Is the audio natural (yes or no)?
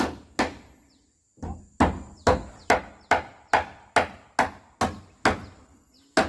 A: yes